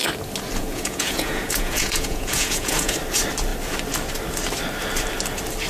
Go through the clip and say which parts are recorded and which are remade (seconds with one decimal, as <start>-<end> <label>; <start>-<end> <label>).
0.0-0.6 recorded; 0.6-3.0 remade; 3.0-5.7 recorded